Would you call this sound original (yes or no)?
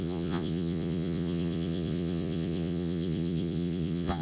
no